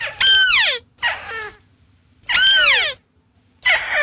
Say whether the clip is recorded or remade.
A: recorded